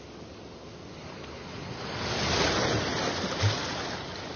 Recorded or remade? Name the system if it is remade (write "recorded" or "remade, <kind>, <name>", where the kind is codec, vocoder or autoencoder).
recorded